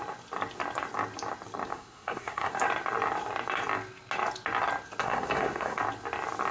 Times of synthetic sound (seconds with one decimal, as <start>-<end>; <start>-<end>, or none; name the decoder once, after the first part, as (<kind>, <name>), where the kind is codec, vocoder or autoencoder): 1.7-2.5 (codec, SNAC); 5.0-5.8